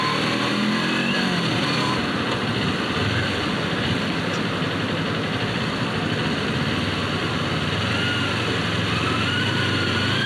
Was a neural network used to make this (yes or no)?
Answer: no